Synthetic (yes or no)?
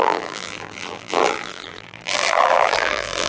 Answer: yes